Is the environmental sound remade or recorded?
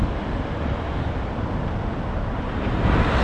remade